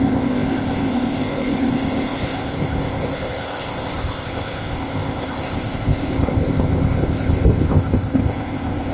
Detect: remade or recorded remade